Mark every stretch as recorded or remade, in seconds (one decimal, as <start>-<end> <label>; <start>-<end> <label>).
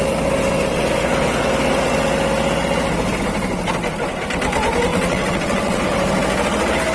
0.0-4.9 recorded; 4.9-5.8 remade; 5.8-6.9 recorded